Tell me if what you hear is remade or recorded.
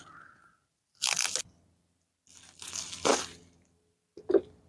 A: recorded